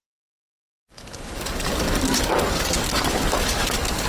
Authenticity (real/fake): fake